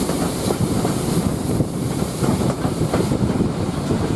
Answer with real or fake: fake